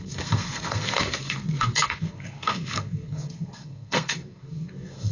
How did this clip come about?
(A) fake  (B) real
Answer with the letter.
A